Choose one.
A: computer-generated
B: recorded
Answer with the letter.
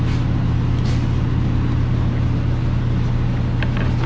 B